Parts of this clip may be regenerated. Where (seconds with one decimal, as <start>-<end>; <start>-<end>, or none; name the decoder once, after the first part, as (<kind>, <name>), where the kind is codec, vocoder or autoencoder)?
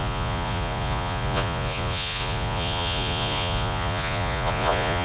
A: 0.0-5.0 (vocoder, Vocos)